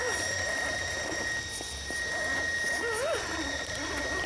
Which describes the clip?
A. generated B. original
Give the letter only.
B